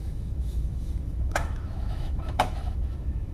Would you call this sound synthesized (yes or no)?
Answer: yes